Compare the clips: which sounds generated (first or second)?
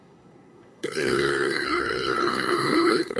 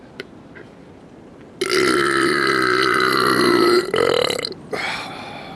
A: first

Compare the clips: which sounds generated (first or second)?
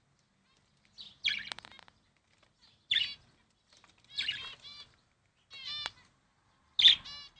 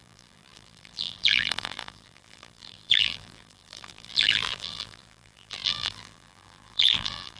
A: second